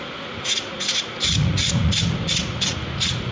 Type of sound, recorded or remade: remade